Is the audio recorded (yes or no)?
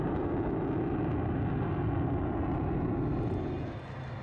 yes